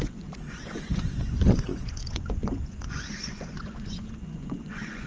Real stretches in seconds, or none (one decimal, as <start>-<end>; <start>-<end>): none